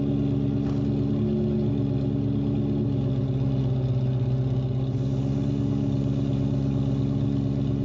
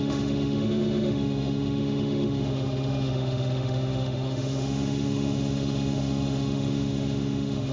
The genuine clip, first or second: first